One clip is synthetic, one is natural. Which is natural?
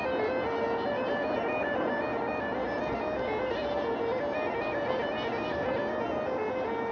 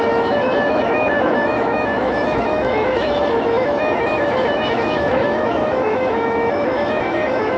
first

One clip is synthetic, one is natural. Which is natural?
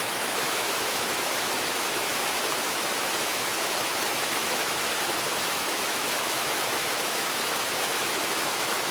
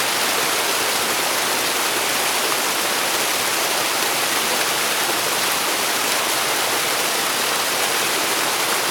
second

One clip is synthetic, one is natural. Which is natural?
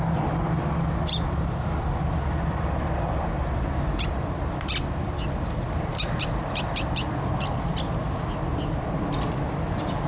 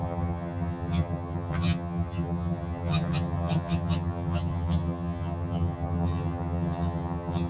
first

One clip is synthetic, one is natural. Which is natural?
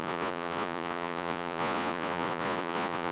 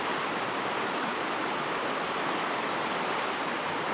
second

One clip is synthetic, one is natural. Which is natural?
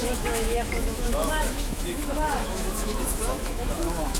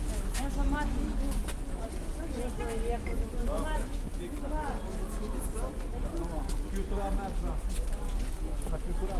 second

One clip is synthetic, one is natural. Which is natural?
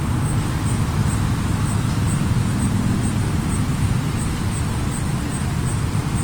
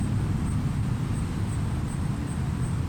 first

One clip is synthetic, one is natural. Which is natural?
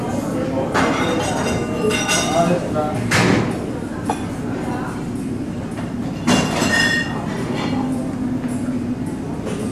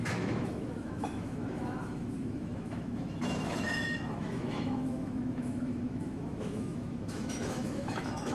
first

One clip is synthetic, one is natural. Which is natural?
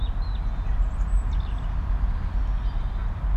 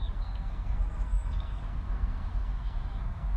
first